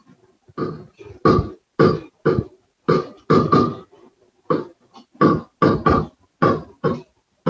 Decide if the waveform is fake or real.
real